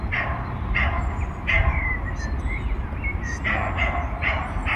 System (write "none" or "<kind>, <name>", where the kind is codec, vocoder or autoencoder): none